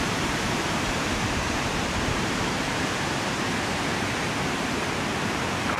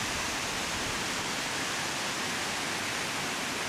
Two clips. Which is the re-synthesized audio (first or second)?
first